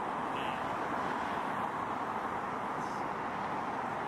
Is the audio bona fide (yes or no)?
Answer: yes